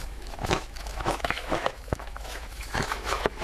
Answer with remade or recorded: remade